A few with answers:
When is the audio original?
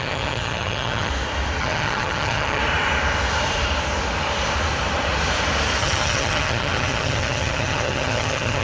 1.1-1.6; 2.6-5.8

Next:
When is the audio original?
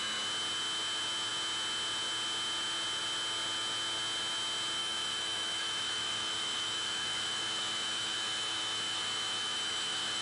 0.0-4.8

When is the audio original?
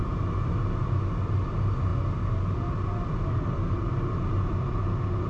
0.0-5.3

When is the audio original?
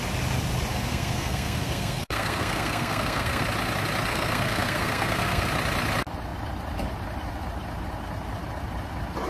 0.0-0.7; 3.4-4.1; 5.5-9.3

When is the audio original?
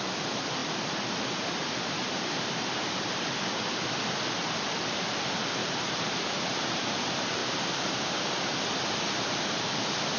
0.0-0.6; 3.6-5.6; 6.9-7.4; 9.7-10.2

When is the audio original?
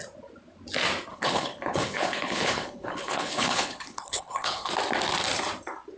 0.0-1.1; 4.7-6.0